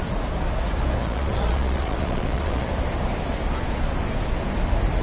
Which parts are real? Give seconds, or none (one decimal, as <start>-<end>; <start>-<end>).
0.0-1.0; 2.7-5.0